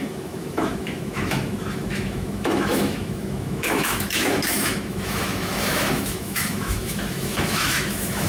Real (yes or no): no